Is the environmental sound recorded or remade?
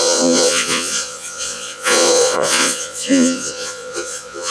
remade